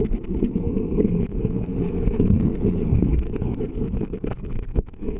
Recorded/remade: remade